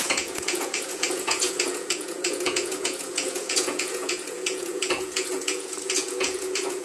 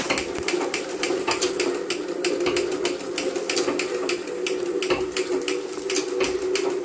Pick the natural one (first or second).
second